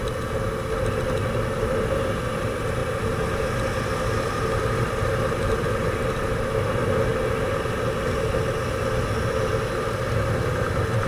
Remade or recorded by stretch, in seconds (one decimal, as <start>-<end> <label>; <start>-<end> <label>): 0.0-11.1 recorded

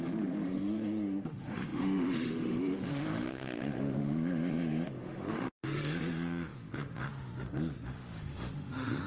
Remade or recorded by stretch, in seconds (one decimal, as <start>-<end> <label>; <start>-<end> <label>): 0.0-9.1 remade

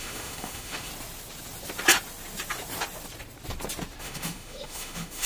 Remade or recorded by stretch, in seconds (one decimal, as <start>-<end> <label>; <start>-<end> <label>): 0.0-0.9 remade; 0.9-4.0 recorded; 4.0-5.3 remade